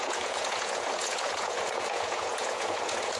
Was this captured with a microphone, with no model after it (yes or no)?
no